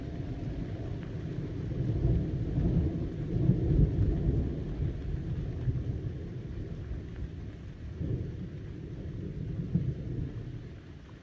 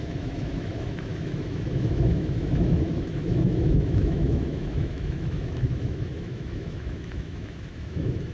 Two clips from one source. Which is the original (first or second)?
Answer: first